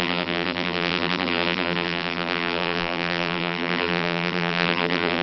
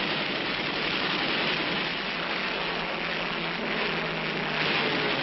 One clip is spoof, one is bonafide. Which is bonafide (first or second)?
second